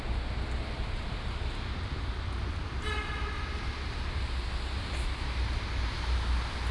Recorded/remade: recorded